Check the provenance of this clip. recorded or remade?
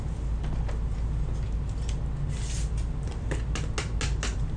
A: recorded